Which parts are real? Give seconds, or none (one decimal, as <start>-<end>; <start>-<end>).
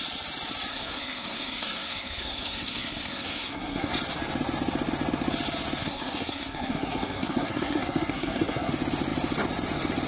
0.0-0.7; 3.9-5.8; 8.7-10.1